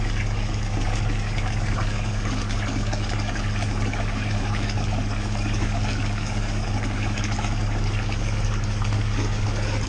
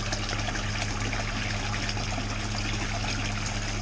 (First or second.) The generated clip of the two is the first